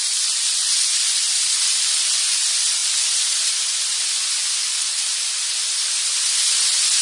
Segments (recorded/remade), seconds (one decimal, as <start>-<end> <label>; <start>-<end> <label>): 0.0-7.0 recorded